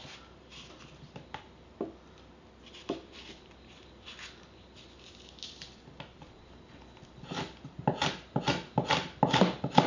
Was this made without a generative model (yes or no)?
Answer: yes